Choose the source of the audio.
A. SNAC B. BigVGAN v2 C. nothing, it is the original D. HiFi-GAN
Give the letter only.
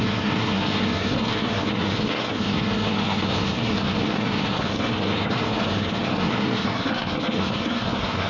A